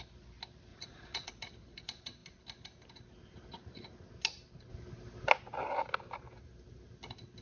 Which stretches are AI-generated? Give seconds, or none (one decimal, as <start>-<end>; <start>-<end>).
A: 0.7-1.3